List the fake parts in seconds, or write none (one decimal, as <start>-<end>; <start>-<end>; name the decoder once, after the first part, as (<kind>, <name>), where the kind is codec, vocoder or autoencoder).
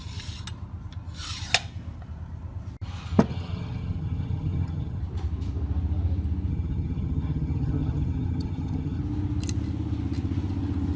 3.3-5.0 (vocoder, HiFi-GAN); 6.5-9.0